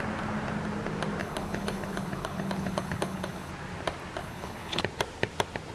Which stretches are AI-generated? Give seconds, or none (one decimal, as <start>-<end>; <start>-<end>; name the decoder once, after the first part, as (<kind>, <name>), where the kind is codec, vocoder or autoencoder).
1.2-3.5 (codec, HILCodec); 4.2-4.8